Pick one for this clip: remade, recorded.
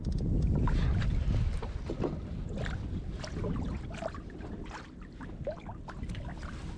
recorded